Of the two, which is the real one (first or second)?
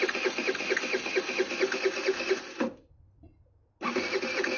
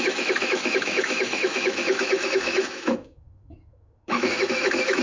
first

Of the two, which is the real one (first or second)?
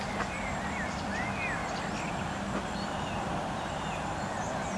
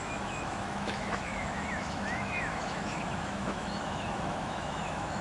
first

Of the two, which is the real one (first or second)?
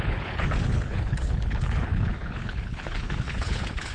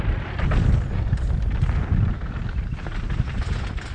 second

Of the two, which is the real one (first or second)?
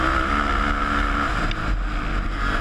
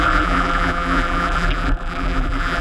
first